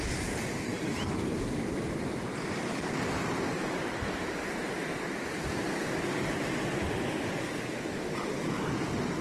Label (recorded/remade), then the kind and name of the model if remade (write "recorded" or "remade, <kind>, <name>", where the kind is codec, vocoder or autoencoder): recorded